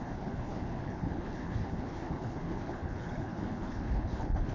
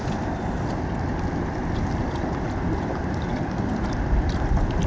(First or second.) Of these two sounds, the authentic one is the second